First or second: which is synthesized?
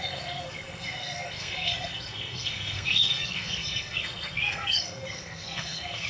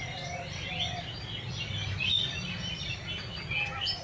first